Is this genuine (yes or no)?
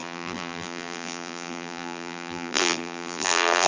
no